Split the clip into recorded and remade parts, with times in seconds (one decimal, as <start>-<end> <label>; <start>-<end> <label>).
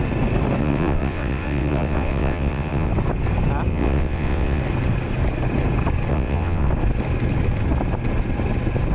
0.0-0.6 recorded; 0.6-2.9 remade; 2.9-3.7 recorded; 3.7-4.6 remade; 4.6-6.1 recorded; 6.1-6.7 remade; 6.7-8.9 recorded